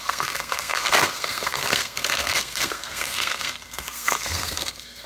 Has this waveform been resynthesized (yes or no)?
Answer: yes